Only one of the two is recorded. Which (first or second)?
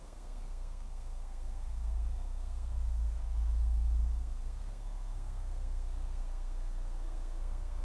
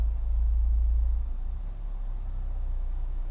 second